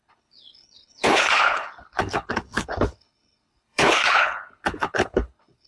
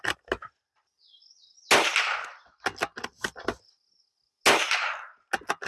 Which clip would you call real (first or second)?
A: second